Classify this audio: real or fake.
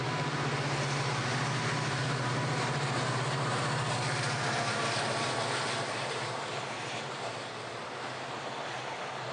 real